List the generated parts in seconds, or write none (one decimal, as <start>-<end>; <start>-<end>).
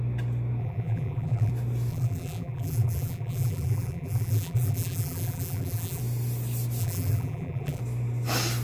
0.6-1.5; 1.9-6.0; 6.8-7.8